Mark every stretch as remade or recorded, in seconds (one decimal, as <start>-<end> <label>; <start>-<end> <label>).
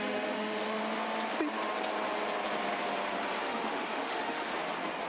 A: 0.0-0.8 remade; 0.8-3.4 recorded; 3.4-4.5 remade; 4.5-5.1 recorded